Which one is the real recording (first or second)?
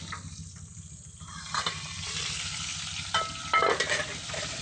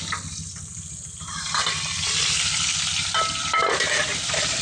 first